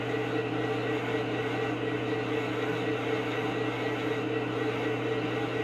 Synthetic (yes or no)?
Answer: no